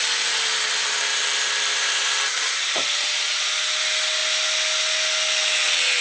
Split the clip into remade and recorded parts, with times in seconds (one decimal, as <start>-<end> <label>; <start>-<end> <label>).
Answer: 0.0-1.1 recorded; 1.1-3.4 remade; 3.4-6.0 recorded